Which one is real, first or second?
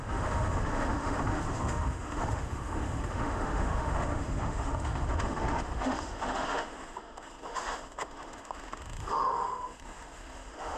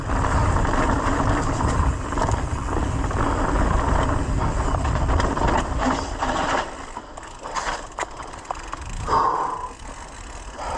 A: second